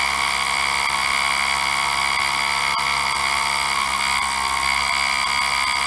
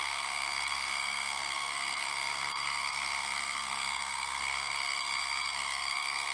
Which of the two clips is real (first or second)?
first